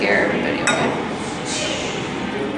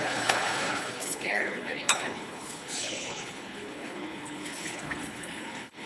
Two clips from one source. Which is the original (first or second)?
first